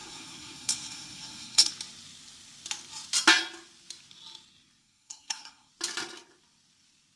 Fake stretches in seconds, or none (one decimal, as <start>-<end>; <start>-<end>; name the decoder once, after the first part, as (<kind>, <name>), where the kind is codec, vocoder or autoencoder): 0.0-1.7 (codec, SNAC); 4.8-5.7